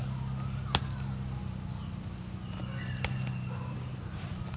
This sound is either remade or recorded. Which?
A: recorded